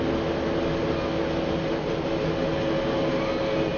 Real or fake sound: real